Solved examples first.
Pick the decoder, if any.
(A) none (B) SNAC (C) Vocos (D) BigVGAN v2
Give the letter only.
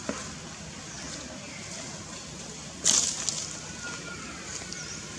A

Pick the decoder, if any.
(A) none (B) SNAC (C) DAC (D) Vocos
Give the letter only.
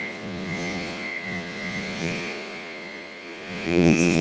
D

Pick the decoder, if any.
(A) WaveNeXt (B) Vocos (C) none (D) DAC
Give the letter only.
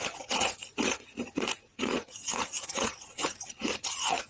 B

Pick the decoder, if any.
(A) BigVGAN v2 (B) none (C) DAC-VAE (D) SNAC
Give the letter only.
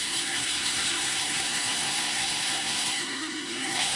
D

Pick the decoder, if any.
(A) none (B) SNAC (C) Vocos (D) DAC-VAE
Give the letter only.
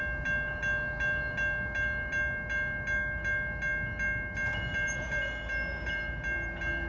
A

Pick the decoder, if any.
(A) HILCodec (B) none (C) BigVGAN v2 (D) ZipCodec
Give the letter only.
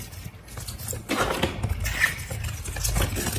B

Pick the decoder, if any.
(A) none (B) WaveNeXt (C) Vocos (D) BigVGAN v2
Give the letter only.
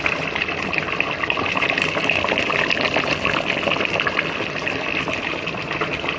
A